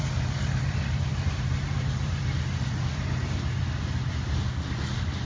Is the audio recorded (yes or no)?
yes